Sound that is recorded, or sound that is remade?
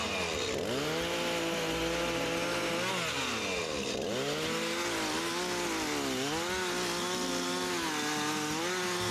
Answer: recorded